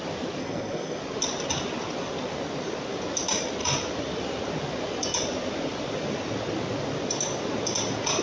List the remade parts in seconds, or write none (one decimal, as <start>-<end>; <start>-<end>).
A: 0.4-1.0